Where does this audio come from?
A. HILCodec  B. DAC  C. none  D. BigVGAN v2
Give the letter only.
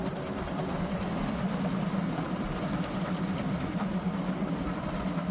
C